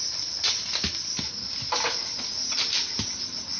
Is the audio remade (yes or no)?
no